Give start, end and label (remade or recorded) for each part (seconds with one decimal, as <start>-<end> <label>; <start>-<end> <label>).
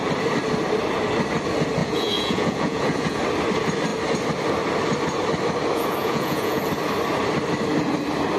0.0-1.8 recorded; 1.8-3.2 remade; 3.2-6.0 recorded; 6.0-6.6 remade; 6.6-8.4 recorded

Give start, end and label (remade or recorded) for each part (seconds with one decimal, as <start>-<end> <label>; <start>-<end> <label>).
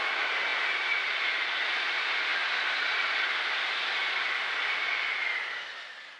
0.0-6.2 recorded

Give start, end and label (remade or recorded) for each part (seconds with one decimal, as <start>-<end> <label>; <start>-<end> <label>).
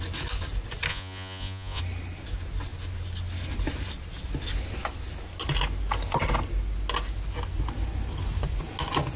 0.0-0.9 recorded; 0.9-1.8 remade; 1.8-9.2 recorded